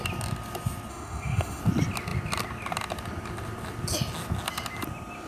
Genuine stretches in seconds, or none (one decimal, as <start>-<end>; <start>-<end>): 0.0-0.9; 1.6-5.3